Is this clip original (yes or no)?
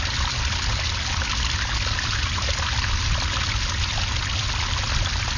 yes